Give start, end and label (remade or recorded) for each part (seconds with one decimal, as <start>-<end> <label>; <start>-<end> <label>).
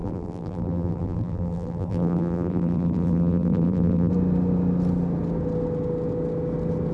0.0-4.1 remade; 4.1-6.9 recorded